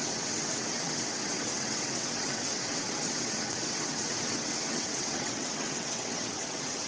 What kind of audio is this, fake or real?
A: fake